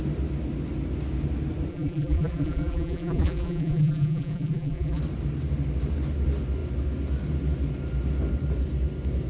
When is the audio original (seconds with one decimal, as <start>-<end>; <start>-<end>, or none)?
0.0-1.7; 5.0-9.3